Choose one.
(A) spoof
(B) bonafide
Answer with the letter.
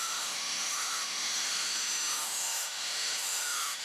A